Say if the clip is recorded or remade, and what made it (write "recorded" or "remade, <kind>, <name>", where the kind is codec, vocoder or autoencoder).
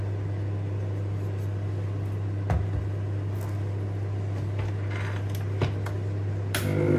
recorded